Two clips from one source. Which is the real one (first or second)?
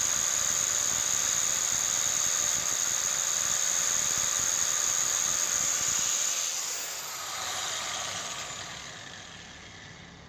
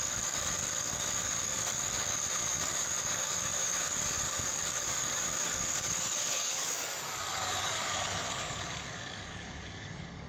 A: first